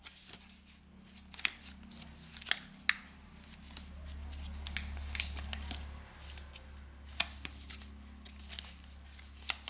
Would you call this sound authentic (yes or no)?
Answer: yes